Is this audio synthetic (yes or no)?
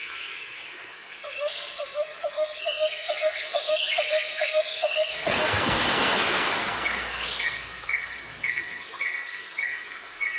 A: yes